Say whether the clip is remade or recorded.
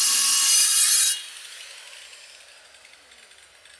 recorded